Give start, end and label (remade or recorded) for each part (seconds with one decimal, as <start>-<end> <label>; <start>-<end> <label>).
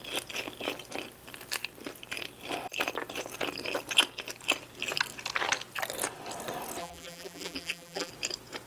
0.0-6.8 recorded; 6.8-8.1 remade; 8.1-8.7 recorded